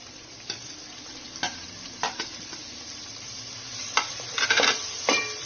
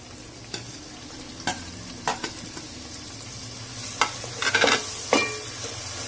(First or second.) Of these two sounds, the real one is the second